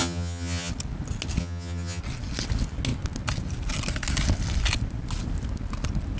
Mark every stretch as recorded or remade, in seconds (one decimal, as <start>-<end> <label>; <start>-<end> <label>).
0.0-0.7 remade; 0.7-1.4 recorded; 1.4-2.0 remade; 2.0-6.2 recorded